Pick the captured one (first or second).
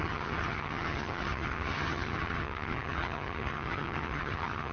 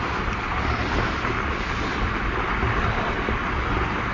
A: second